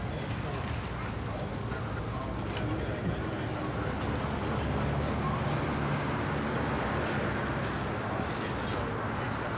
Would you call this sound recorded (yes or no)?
yes